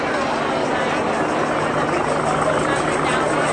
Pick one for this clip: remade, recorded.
recorded